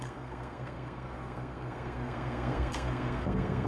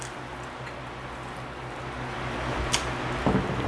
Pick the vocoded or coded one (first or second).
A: first